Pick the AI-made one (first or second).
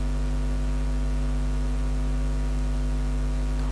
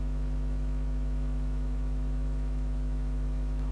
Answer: second